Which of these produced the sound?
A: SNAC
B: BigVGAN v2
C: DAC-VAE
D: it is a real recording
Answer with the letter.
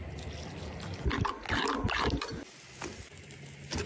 D